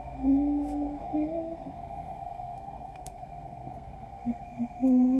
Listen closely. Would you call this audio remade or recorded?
remade